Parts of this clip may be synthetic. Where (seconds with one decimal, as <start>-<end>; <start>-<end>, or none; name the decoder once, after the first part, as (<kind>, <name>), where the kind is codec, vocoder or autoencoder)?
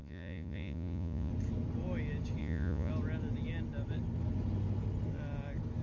0.0-1.3 (vocoder, Vocos); 2.4-2.9